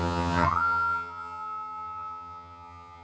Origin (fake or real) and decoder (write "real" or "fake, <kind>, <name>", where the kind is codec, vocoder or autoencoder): fake, vocoder, HiFi-GAN